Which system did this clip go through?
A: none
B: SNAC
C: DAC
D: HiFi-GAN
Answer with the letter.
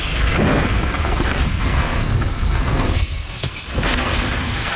B